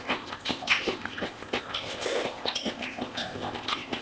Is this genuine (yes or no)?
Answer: no